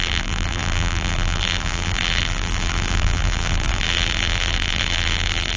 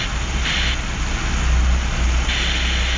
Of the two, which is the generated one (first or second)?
first